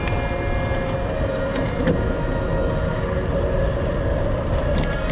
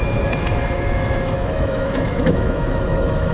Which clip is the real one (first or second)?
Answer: first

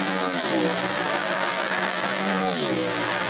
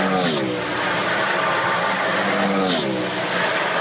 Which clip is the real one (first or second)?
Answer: second